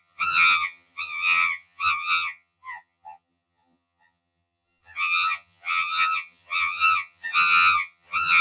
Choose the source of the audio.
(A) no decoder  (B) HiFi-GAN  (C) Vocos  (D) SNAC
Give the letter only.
B